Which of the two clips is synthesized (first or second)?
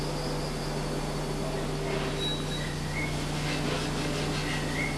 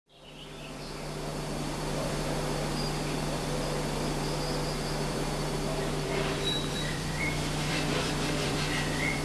second